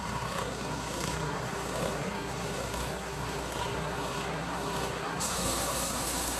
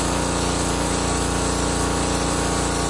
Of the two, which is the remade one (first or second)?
first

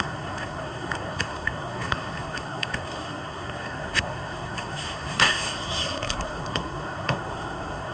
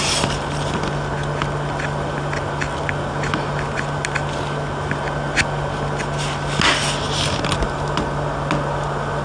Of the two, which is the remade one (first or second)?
first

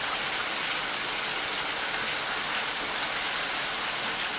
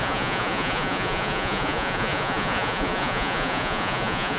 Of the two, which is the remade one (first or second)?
second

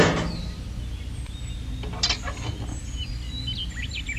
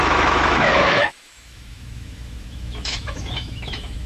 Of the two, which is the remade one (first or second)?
second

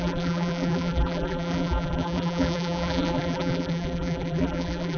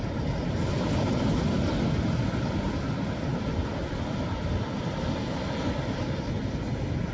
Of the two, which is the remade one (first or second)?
first